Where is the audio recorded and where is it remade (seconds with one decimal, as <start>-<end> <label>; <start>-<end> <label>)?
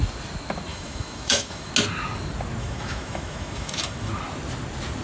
0.0-0.7 recorded; 0.7-1.7 remade; 1.7-2.6 recorded; 2.6-4.1 remade; 4.1-5.0 recorded